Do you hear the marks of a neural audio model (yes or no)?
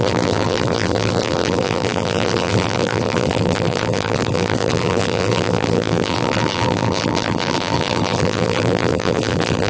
yes